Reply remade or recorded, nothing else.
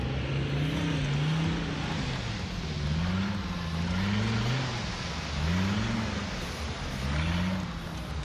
recorded